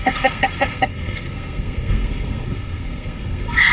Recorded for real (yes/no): no